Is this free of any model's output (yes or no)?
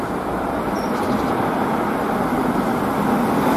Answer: no